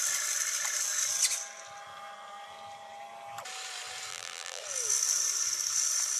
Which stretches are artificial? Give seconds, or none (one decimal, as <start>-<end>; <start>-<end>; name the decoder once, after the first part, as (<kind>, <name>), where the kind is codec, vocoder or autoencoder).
4.1-4.6 (vocoder, BigVGAN v2)